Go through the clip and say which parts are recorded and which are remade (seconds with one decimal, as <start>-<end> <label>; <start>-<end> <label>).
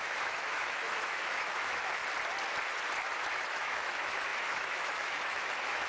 0.0-2.0 remade; 2.0-3.3 recorded; 3.3-5.9 remade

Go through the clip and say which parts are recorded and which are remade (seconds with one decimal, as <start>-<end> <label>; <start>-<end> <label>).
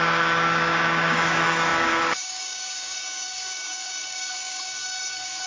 0.0-5.5 remade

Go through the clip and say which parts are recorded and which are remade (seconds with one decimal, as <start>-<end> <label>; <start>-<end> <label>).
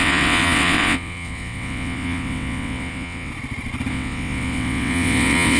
0.0-3.3 remade; 3.3-3.9 recorded; 3.9-5.6 remade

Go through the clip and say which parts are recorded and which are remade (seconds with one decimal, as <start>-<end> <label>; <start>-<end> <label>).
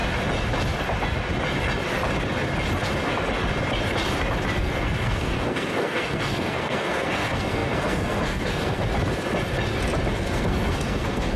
0.0-4.6 recorded; 4.6-8.8 remade; 8.8-10.1 recorded; 10.1-11.4 remade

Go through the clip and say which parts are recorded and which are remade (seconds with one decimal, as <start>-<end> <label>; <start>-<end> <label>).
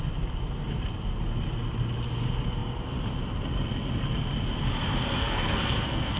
0.0-5.2 recorded; 5.2-6.2 remade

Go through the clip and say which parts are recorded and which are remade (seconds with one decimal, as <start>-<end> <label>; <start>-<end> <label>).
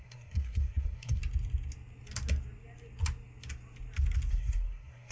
0.0-1.2 remade; 1.2-4.3 recorded; 4.3-5.1 remade